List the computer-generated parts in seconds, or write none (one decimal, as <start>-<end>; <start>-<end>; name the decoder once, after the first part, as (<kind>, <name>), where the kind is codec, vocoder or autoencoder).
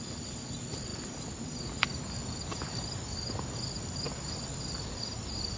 none